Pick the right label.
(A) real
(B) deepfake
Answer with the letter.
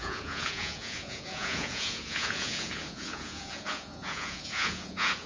B